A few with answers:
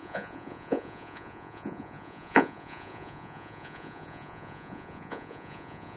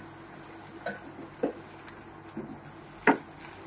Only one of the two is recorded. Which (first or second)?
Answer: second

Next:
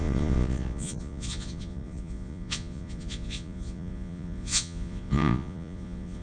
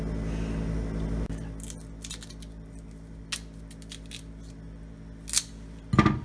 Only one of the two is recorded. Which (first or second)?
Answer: second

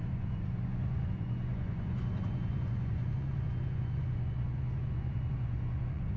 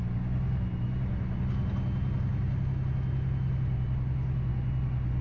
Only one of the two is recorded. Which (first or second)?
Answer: second